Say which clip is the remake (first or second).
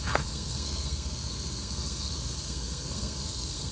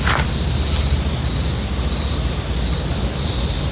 first